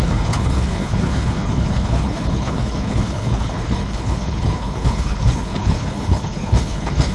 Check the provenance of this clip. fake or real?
fake